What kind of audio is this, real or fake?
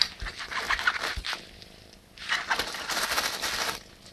real